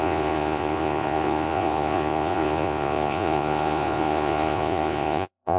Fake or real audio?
fake